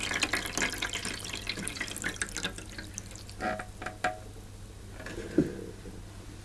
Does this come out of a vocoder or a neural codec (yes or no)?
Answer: no